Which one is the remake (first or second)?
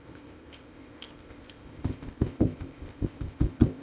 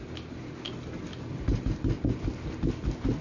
first